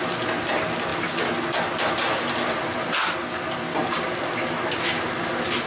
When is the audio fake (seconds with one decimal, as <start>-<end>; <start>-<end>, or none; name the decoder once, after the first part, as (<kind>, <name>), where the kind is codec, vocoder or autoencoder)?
none